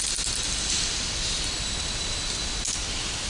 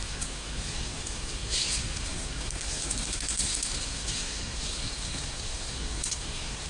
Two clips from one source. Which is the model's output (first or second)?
second